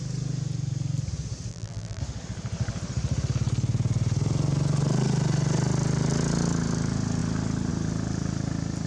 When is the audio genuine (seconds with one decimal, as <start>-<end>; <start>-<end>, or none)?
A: 0.0-1.5; 2.0-8.9